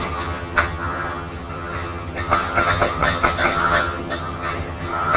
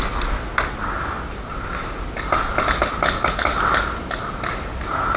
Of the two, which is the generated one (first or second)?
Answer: first